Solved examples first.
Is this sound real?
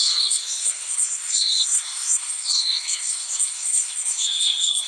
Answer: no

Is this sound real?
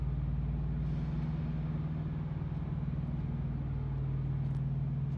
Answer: yes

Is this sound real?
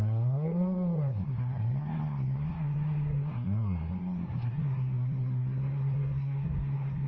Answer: no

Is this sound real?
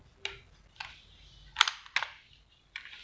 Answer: yes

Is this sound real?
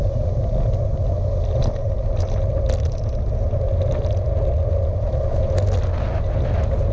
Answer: yes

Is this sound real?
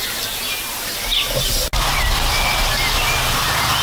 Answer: yes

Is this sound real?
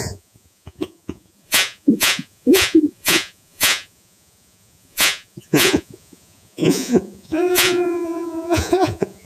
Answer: no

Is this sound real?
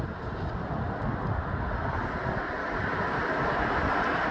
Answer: yes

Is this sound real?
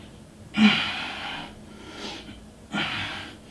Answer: yes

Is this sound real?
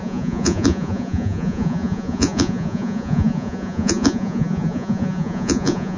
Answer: no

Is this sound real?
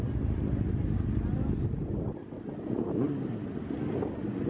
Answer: yes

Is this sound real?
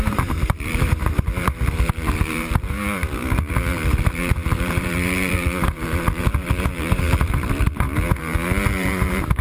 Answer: no